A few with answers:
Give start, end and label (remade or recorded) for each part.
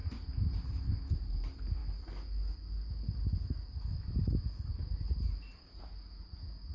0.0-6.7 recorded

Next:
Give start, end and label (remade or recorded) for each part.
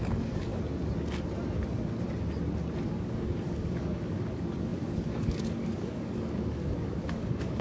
0.0-0.5 remade; 0.5-2.9 recorded; 2.9-7.6 remade